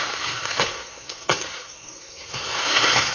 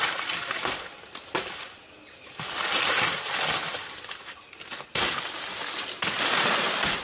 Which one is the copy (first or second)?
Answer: first